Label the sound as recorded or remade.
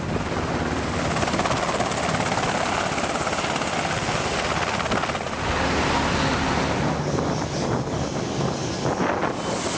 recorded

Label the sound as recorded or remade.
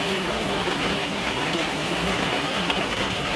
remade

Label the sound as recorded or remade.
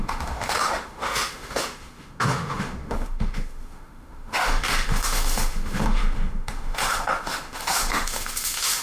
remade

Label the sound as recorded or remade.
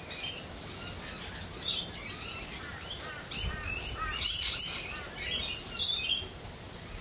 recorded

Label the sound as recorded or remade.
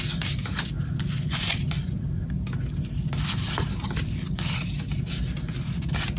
recorded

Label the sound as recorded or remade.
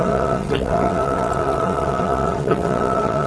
remade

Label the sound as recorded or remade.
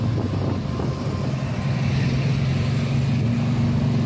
recorded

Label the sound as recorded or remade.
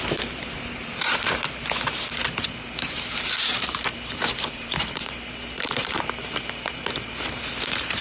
remade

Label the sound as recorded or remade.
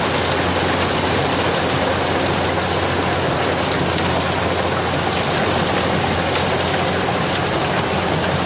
recorded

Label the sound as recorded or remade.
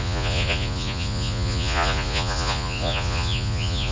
remade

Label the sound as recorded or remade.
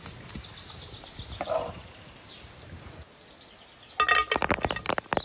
recorded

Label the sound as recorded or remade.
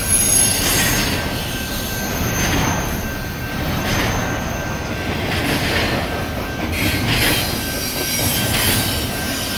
recorded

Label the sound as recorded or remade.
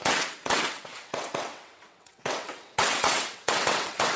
remade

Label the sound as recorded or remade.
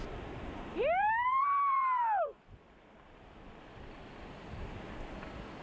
remade